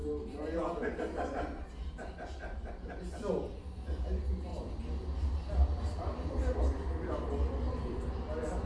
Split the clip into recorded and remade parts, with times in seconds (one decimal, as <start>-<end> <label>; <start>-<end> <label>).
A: 0.0-8.7 recorded

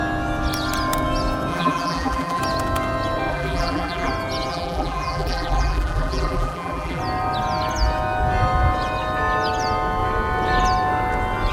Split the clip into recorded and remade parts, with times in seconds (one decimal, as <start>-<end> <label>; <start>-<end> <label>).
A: 0.0-1.5 recorded; 1.5-2.4 remade; 2.4-3.3 recorded; 3.3-4.1 remade; 4.1-4.5 recorded; 4.5-7.0 remade; 7.0-11.5 recorded

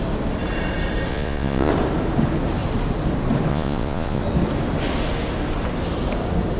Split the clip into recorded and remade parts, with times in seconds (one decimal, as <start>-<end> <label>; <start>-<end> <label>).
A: 0.0-1.1 recorded; 1.1-1.7 remade; 1.7-3.5 recorded; 3.5-4.2 remade; 4.2-6.6 recorded

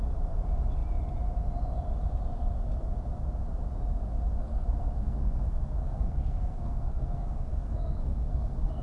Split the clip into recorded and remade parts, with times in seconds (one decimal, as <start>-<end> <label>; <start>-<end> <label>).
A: 0.0-4.4 recorded; 4.4-8.8 remade